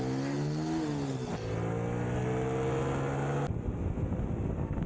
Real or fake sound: real